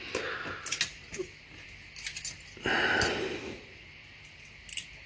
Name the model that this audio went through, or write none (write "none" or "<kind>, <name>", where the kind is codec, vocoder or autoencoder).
none